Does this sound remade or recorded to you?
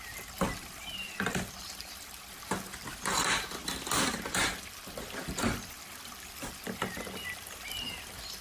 remade